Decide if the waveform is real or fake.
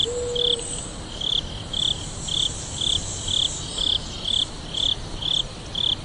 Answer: real